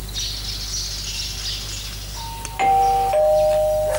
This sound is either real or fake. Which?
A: real